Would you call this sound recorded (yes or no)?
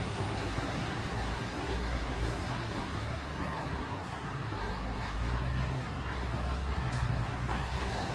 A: no